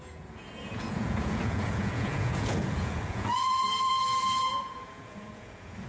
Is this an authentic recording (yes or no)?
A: no